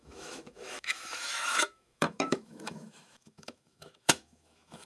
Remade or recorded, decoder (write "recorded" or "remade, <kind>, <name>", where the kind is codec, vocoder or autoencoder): remade, autoencoder, DAC-VAE